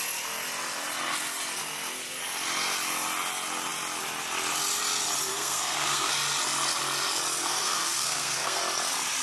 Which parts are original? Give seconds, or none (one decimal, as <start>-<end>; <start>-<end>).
0.0-5.3; 6.1-7.4; 8.6-9.2